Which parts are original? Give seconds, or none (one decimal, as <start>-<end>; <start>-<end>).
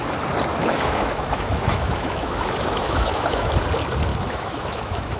0.0-0.5; 3.5-4.1